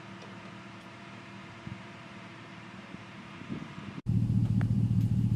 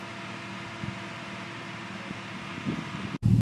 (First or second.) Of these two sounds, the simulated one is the first